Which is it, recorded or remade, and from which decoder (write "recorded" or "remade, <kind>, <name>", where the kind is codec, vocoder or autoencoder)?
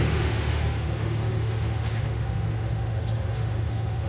remade, autoencoder, DAC-VAE